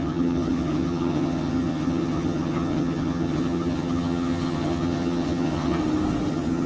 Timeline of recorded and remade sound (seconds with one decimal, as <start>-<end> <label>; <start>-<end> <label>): 0.0-5.8 remade; 5.8-6.3 recorded; 6.3-6.7 remade